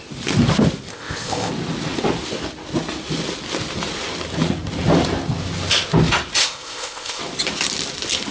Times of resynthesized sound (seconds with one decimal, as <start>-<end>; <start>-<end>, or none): 0.9-1.5; 6.4-7.2